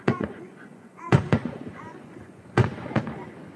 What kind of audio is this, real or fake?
fake